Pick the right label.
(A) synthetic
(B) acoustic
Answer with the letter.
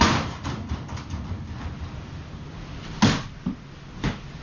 B